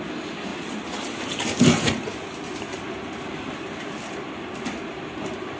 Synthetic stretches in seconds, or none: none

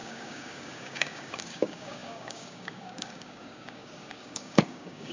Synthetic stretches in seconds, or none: 0.0-5.1 (codec, DAC)

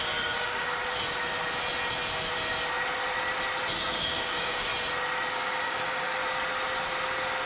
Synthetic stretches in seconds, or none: 0.0-0.8 (codec, DAC); 3.8-4.7; 5.3-6.2

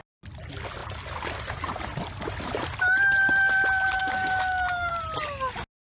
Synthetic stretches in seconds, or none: 4.0-4.9 (codec, DAC)

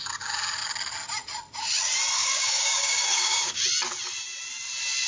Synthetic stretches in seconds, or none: 2.2-3.6 (codec, DAC)